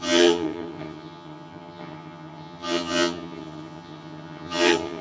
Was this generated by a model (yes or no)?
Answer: yes